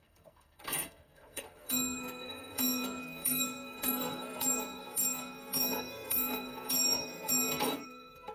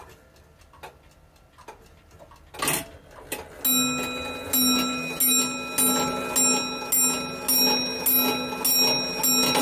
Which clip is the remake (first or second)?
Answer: first